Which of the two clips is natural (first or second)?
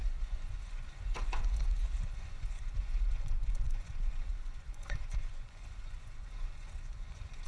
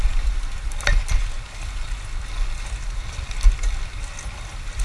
second